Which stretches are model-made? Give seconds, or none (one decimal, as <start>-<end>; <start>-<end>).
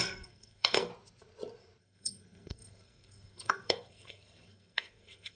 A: 0.0-0.9; 1.8-5.4